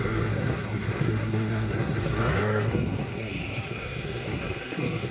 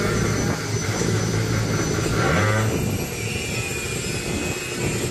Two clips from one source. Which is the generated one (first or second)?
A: first